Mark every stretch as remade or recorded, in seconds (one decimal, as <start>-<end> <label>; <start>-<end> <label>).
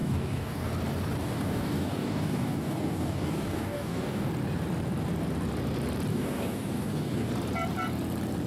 0.0-0.7 remade; 0.7-1.2 recorded; 1.2-4.3 remade; 4.3-6.1 recorded; 6.1-7.3 remade; 7.3-8.5 recorded